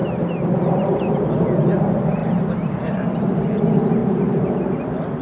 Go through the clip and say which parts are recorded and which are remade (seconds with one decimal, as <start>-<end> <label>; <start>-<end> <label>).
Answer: 0.0-1.2 remade; 1.2-2.2 recorded; 2.2-3.1 remade; 3.1-4.0 recorded; 4.0-4.8 remade; 4.8-5.2 recorded